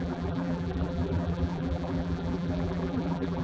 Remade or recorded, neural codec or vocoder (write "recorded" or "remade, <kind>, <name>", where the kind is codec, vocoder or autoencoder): remade, vocoder, BigVGAN v2